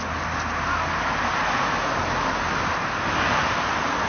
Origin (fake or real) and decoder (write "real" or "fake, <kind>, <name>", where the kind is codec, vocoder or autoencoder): real